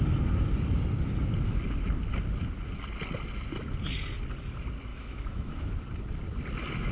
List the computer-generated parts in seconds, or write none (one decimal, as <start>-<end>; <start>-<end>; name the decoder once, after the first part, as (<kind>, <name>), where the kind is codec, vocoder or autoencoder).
4.9-5.7 (autoencoder, DAC-VAE)